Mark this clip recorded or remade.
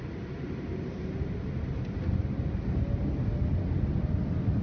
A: recorded